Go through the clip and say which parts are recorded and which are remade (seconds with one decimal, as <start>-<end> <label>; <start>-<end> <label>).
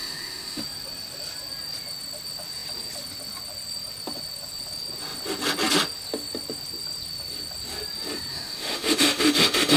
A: 0.0-0.6 remade; 0.6-8.3 recorded; 8.3-9.8 remade